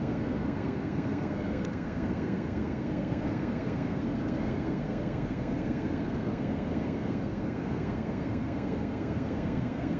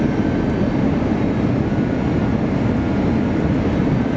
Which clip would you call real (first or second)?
second